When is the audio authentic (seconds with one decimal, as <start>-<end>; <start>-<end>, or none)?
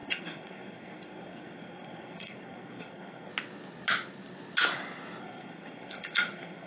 3.3-5.2